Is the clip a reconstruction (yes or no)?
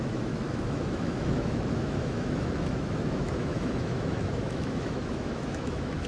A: yes